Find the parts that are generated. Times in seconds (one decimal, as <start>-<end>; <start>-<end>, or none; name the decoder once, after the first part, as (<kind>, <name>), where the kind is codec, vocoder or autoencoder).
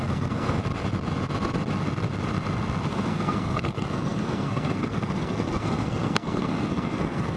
0.0-0.6 (codec, SNAC); 2.9-7.4